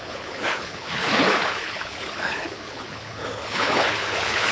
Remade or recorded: remade